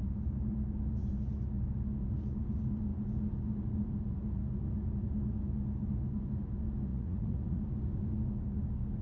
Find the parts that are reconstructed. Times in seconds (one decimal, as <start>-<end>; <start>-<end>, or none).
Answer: 6.9-7.6